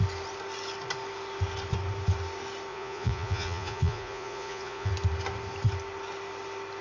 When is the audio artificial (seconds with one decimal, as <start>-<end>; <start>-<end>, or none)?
2.7-4.9

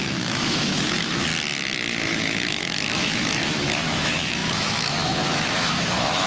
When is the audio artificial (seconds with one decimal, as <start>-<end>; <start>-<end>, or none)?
0.0-1.3; 2.0-6.3

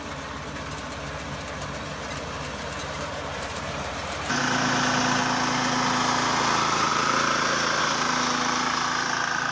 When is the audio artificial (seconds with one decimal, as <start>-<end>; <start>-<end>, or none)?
2.8-4.4; 6.9-7.8

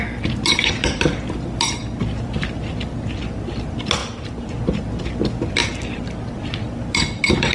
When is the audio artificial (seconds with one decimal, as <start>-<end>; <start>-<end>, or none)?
none

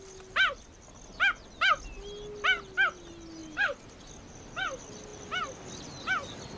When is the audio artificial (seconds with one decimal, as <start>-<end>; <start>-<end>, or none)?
3.4-4.0

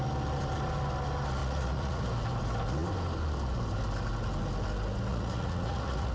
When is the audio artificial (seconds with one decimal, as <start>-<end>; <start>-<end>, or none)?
1.4-2.0; 5.1-6.1

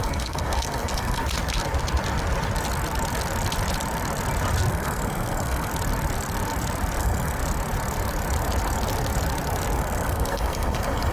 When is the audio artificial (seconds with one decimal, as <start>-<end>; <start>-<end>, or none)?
0.0-1.2; 4.7-5.7; 7.0-7.4; 9.8-11.1

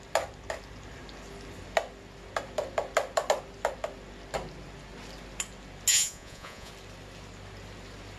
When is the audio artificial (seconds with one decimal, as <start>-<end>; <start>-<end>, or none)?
5.9-6.7